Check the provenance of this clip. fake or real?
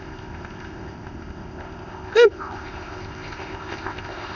fake